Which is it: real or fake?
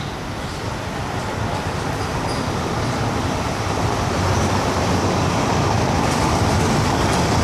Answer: fake